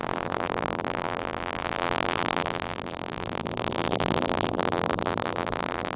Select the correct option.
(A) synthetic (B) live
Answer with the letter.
A